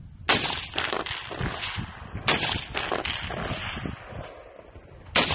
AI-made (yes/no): no